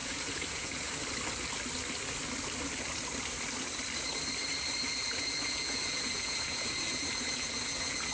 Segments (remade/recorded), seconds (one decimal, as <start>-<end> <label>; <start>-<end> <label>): 0.0-0.9 remade; 0.9-4.8 recorded; 4.8-8.1 remade